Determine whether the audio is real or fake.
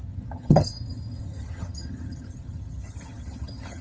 fake